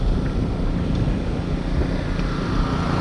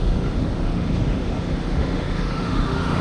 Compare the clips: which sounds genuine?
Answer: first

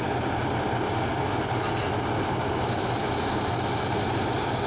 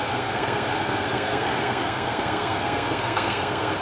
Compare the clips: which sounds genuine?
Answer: first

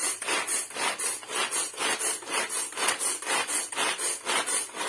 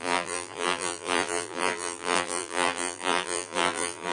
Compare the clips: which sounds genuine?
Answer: first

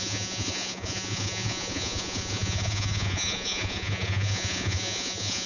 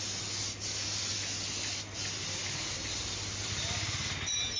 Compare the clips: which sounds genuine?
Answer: second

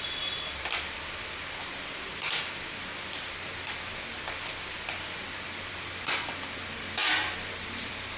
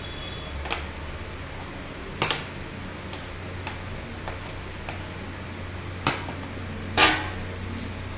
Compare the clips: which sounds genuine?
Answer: second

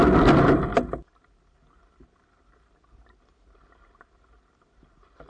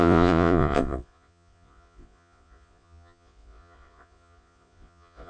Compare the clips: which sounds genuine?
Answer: first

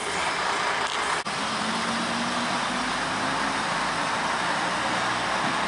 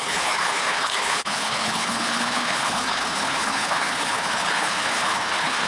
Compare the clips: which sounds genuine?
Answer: first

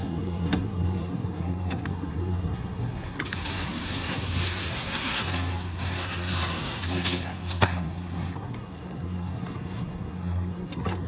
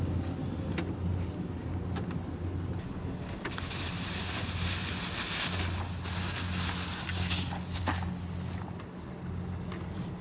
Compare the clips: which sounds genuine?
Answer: second